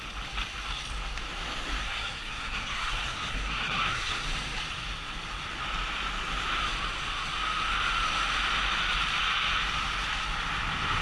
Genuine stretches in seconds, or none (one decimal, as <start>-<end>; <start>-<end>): 0.0-1.8; 4.3-11.0